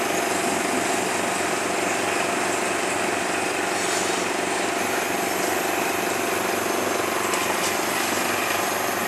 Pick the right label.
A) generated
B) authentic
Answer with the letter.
B